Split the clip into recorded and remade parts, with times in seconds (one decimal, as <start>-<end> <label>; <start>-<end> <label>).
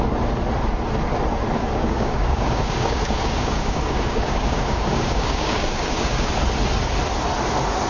0.0-1.6 recorded; 1.6-6.3 remade; 6.3-7.9 recorded